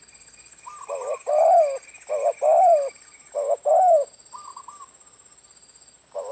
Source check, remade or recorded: recorded